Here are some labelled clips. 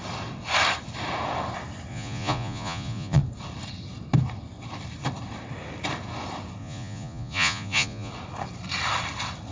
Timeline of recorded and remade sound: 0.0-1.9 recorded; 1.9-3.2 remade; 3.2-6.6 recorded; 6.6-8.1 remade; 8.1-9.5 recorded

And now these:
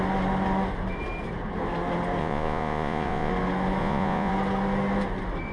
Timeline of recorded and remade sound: 0.0-2.2 recorded; 2.2-3.3 remade; 3.3-3.8 recorded; 3.8-4.3 remade; 4.3-5.5 recorded

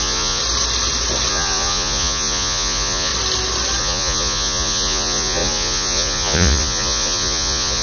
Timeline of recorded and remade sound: 0.0-0.4 remade; 0.4-1.3 recorded; 1.3-3.1 remade; 3.1-3.8 recorded; 3.8-7.8 remade

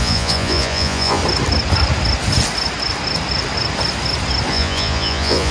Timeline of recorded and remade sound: 0.0-1.2 remade; 1.2-4.5 recorded; 4.5-5.5 remade